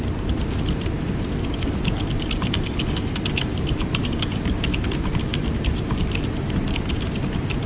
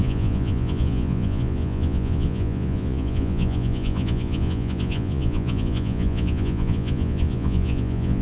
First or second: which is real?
first